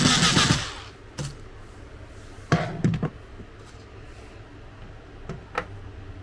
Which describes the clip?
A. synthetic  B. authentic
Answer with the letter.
B